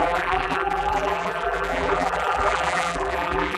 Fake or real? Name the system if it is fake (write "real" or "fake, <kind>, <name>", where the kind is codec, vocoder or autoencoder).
fake, vocoder, BigVGAN v2